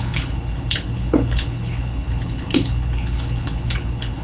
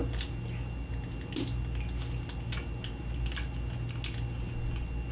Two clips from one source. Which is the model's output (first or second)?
first